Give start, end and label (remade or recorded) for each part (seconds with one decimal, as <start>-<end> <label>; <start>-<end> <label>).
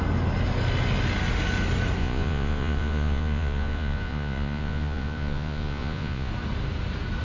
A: 0.0-2.0 recorded; 2.0-6.3 remade; 6.3-7.2 recorded